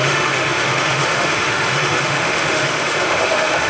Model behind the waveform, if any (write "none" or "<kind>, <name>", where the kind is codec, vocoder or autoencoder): autoencoder, DAC-VAE